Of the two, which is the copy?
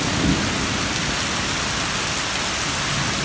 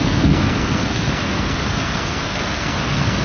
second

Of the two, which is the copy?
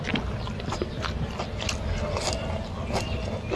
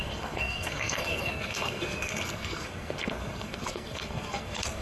second